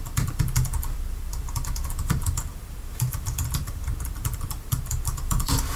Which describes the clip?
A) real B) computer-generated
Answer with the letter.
B